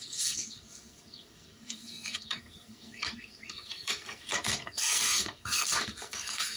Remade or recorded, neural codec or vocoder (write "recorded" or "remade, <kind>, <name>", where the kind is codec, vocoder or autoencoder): remade, codec, SNAC